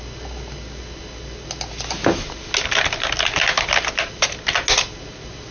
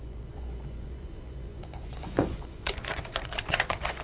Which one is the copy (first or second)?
second